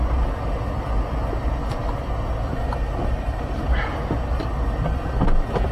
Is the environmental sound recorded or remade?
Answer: recorded